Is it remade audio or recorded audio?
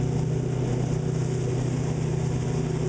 recorded